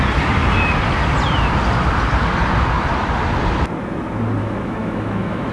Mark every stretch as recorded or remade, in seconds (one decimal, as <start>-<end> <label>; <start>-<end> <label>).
0.0-4.4 recorded; 4.4-5.5 remade